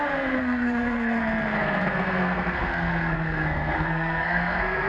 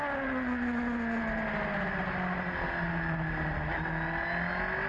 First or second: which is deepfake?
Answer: first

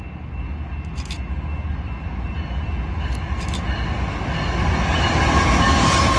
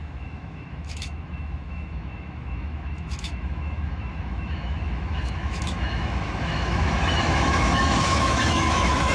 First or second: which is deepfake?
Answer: second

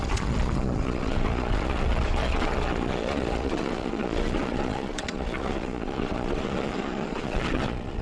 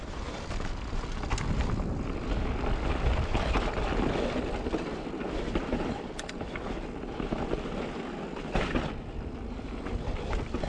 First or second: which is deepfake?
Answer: first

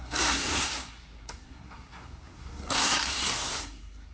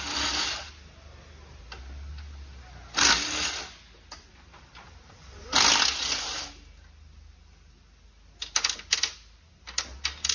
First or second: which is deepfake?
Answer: first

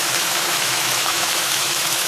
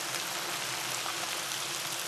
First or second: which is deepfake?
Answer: first